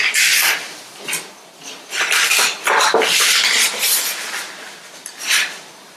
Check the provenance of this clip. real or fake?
fake